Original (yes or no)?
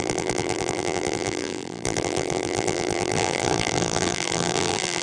no